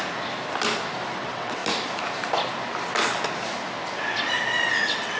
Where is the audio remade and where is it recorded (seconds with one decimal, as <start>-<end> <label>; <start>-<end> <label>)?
0.0-1.2 recorded; 1.2-1.6 remade; 1.6-4.7 recorded; 4.7-5.2 remade